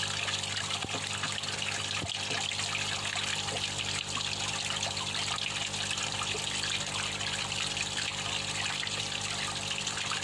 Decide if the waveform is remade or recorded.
recorded